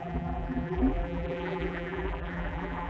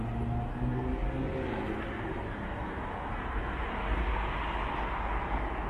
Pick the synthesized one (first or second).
first